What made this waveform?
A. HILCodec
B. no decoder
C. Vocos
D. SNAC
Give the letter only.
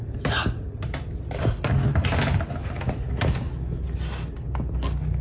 B